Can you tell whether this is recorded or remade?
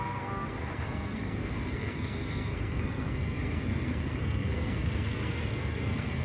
remade